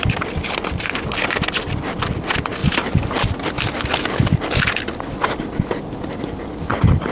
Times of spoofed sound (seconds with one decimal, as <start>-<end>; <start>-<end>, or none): 2.6-3.1